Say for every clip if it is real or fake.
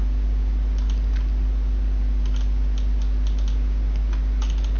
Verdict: real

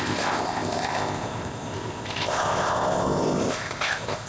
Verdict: fake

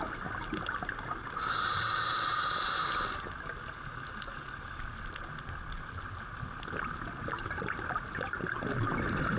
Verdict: real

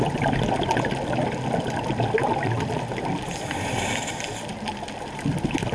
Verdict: real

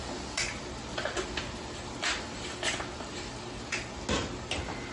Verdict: real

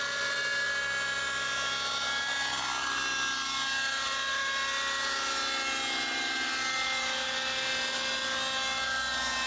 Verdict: real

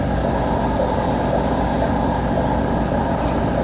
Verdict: real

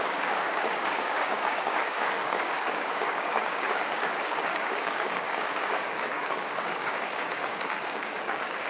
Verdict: fake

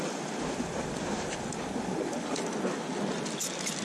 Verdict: real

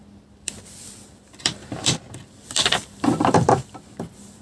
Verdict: fake